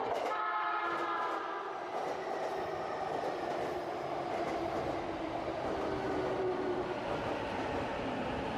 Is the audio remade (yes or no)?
no